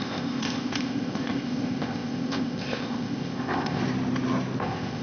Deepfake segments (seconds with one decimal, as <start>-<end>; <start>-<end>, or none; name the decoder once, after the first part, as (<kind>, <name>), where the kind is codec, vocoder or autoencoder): 0.0-3.8 (codec, ZipCodec); 4.6-5.0